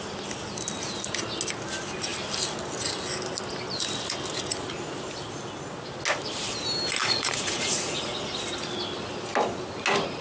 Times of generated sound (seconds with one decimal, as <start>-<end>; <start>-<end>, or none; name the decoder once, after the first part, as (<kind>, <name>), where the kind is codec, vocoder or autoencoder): 7.0-8.4 (vocoder, Vocos)